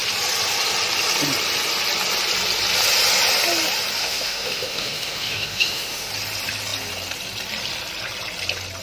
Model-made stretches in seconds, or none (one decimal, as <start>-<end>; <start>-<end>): 4.0-6.1